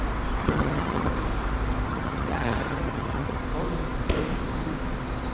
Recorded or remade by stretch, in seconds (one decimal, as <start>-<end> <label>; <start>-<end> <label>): 0.0-0.4 recorded; 0.4-1.1 remade; 1.1-1.9 recorded; 1.9-3.4 remade; 3.4-5.3 recorded